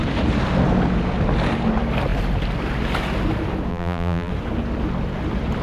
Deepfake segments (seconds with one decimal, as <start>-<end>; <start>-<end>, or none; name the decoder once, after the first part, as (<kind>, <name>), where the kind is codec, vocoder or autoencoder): 3.7-4.3 (vocoder, BigVGAN v2)